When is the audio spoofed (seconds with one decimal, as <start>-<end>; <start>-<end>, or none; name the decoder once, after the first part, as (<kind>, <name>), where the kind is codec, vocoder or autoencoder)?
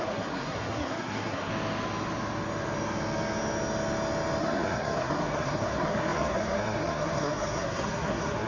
0.0-1.5 (codec, SNAC); 4.4-8.5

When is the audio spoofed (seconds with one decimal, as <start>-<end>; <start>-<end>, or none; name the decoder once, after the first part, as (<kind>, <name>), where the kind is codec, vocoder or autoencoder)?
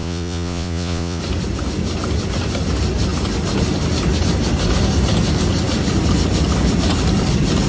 0.0-1.2 (vocoder, Vocos)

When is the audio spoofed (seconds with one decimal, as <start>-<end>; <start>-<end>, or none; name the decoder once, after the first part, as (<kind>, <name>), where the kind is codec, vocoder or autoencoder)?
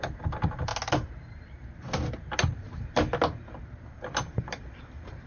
0.0-0.7 (vocoder, BigVGAN v2); 3.9-5.3